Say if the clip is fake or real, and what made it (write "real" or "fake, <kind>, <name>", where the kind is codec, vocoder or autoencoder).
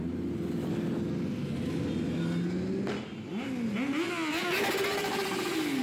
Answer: real